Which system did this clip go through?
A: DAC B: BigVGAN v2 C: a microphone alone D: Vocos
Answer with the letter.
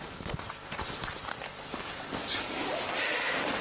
C